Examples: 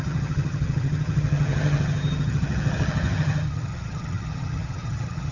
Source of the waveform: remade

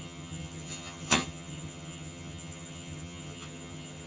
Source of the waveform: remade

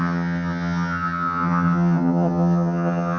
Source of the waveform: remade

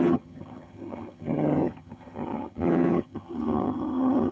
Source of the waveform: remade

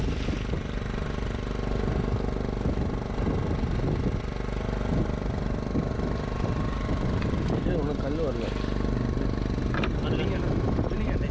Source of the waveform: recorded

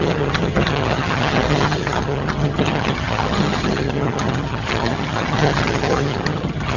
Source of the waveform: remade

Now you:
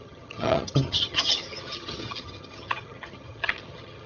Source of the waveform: remade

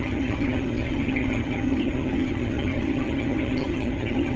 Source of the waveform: remade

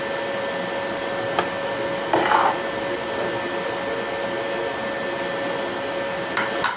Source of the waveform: recorded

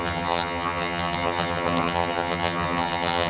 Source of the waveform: remade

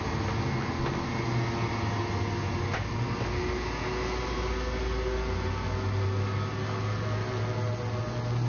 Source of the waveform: recorded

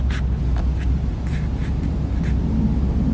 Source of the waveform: recorded